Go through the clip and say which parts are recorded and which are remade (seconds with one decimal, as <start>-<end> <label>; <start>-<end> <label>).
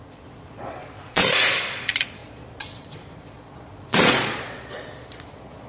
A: 0.0-1.2 remade; 1.2-1.7 recorded; 1.7-5.7 remade